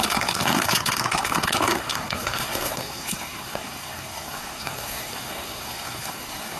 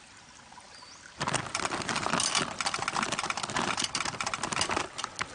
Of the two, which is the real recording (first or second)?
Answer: second